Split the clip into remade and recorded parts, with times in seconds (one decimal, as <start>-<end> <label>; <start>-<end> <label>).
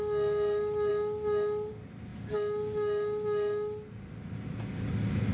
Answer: 0.0-5.3 recorded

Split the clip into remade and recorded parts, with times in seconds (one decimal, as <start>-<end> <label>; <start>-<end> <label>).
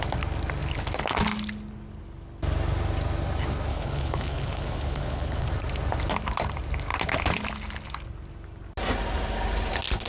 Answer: 0.0-3.7 recorded; 3.7-5.5 remade; 5.5-10.1 recorded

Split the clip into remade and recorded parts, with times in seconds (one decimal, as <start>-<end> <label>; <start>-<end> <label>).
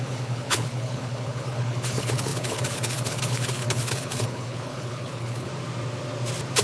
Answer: 0.0-5.5 remade; 5.5-6.6 recorded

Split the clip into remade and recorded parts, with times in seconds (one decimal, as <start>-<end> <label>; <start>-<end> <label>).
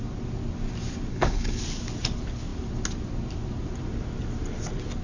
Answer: 0.0-1.1 recorded; 1.1-1.6 remade; 1.6-5.0 recorded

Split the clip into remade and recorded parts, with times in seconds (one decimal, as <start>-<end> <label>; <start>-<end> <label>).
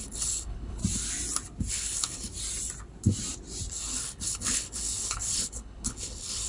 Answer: 0.0-0.8 remade; 0.8-1.7 recorded; 1.7-2.3 remade; 2.3-3.7 recorded; 3.7-6.5 remade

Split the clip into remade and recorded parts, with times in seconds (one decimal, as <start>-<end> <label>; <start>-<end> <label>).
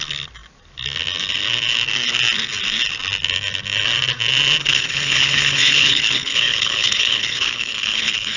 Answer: 0.0-4.6 recorded; 4.6-8.4 remade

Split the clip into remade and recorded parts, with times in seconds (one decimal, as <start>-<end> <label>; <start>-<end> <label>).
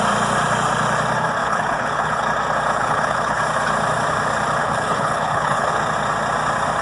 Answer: 0.0-1.4 recorded; 1.4-2.2 remade; 2.2-2.8 recorded; 2.8-3.4 remade; 3.4-4.6 recorded; 4.6-5.7 remade; 5.7-6.8 recorded